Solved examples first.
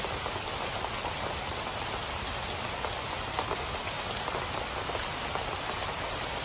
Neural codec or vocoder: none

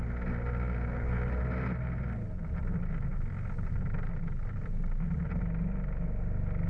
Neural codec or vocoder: none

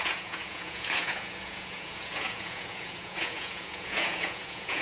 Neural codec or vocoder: vocoder, Vocos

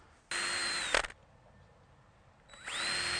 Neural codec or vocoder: none